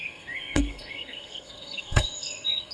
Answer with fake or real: fake